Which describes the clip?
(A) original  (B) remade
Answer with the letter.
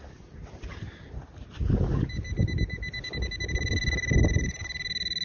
A